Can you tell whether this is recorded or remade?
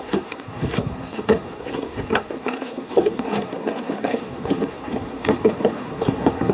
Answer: remade